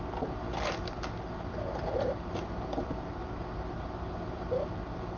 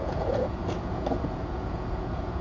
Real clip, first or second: first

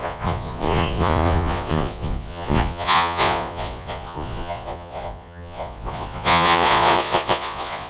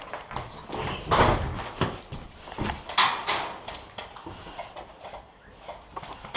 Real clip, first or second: second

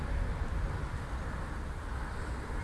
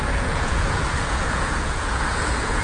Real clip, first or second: first